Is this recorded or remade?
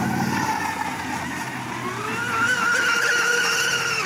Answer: recorded